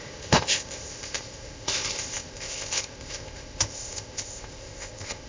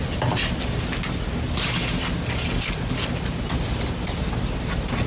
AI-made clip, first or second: first